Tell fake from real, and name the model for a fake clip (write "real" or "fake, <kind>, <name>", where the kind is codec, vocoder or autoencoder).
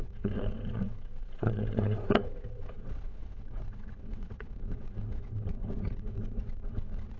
fake, vocoder, WaveNeXt